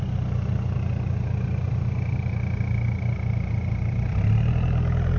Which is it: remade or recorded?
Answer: recorded